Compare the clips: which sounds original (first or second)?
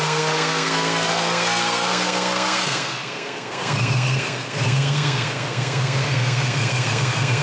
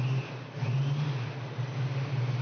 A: second